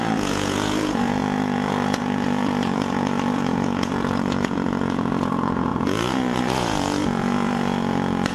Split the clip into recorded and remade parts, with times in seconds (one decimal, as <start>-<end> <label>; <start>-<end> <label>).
0.0-8.3 remade